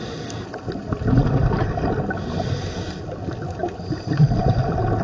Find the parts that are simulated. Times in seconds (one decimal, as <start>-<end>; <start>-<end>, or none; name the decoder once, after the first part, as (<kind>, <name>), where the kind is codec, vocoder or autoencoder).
none